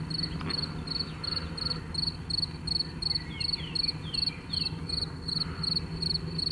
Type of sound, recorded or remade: recorded